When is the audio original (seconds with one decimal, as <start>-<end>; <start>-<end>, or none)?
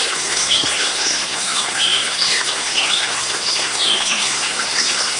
none